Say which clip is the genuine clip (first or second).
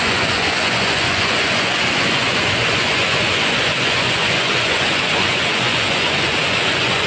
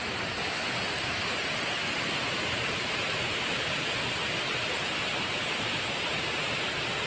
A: second